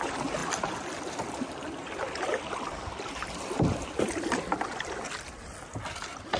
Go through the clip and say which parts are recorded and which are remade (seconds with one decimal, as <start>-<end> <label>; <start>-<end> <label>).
0.0-6.4 remade